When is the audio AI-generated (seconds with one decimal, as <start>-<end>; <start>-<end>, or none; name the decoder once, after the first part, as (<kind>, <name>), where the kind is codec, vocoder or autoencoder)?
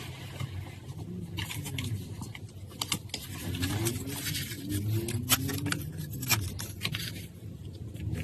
none